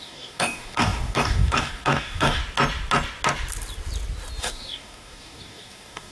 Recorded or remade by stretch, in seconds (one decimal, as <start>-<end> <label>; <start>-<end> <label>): 0.0-2.4 remade; 2.4-4.4 recorded; 4.4-6.1 remade